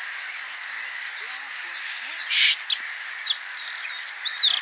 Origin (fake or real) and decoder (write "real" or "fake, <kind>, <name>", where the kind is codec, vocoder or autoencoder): real